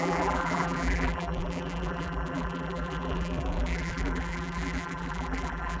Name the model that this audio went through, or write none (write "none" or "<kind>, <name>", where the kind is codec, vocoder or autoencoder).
vocoder, BigVGAN v2